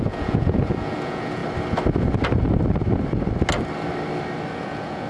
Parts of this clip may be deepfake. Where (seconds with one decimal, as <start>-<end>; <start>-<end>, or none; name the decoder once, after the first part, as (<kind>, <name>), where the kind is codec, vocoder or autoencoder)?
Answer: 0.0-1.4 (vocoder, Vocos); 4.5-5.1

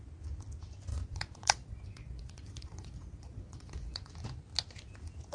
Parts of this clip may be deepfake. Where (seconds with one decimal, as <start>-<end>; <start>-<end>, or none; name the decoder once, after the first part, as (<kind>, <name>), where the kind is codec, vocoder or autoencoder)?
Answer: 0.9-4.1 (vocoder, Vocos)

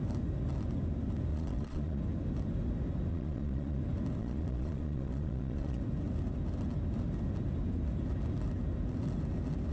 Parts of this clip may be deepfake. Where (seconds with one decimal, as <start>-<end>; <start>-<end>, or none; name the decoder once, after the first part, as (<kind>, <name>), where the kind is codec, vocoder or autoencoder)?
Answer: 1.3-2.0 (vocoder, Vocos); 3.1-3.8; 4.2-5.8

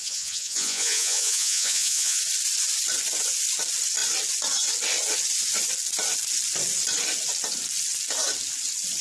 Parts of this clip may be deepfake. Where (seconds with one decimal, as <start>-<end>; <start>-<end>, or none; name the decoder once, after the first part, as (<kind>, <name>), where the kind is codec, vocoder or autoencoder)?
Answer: 0.0-2.2 (vocoder, Vocos)